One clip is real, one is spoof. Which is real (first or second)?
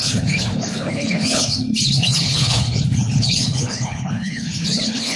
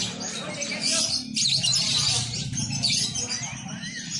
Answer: second